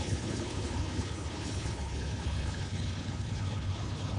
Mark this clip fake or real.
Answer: fake